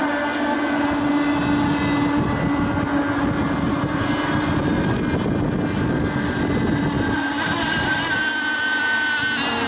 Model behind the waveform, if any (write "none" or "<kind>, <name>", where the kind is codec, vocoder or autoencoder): none